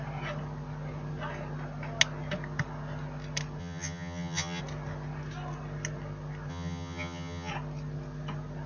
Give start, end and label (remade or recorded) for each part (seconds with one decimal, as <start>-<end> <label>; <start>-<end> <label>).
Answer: 0.0-3.6 recorded; 3.6-4.6 remade; 4.6-6.5 recorded; 6.5-7.5 remade; 7.5-8.7 recorded